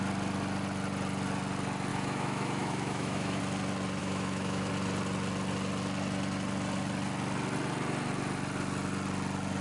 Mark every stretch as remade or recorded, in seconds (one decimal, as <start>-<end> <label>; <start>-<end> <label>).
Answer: 0.0-1.9 recorded; 1.9-3.4 remade; 3.4-4.0 recorded; 4.0-4.7 remade; 4.7-9.6 recorded